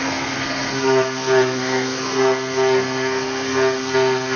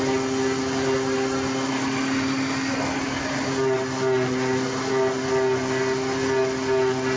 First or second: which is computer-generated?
first